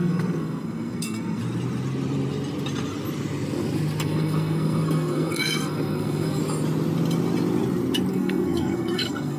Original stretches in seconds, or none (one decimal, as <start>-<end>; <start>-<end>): 1.4-4.0; 6.4-8.1